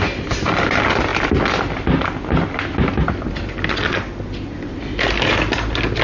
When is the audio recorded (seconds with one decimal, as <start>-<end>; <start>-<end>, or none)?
0.0-6.0